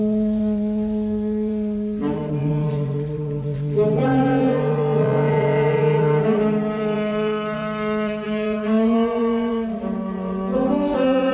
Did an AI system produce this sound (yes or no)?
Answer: yes